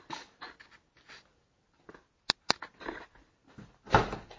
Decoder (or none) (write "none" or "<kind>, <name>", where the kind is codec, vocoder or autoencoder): none